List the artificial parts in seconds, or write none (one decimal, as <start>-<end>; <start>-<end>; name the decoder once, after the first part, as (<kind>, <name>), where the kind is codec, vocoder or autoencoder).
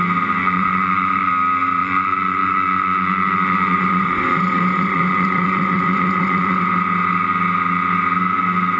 0.4-1.3 (vocoder, Vocos); 1.8-6.6